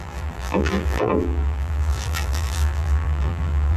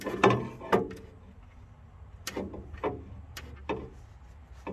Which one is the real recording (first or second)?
second